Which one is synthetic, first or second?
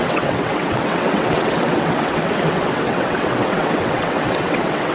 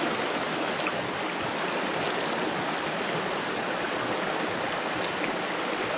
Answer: first